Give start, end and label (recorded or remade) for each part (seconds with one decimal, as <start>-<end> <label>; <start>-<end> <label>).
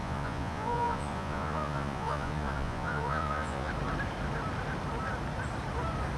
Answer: 0.0-3.7 remade; 3.7-6.2 recorded